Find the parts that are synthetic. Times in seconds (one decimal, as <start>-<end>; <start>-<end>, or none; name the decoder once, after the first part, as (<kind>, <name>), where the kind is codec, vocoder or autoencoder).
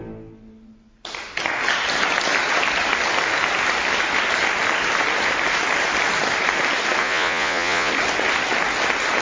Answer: 7.0-7.9 (vocoder, Vocos)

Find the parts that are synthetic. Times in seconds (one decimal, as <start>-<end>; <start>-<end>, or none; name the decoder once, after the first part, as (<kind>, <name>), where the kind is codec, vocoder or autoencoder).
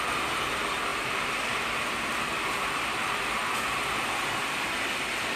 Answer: 0.9-4.1 (vocoder, BigVGAN v2)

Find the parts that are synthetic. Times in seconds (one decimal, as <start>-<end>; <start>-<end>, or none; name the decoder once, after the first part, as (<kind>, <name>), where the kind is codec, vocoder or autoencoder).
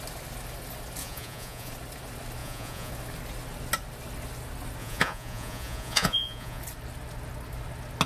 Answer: 1.0-1.7 (vocoder, Vocos); 2.4-2.9; 4.8-6.6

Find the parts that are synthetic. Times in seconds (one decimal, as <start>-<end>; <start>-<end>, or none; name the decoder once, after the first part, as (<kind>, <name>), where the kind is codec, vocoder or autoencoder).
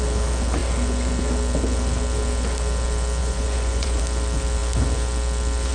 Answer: 3.2-4.0 (vocoder, Vocos)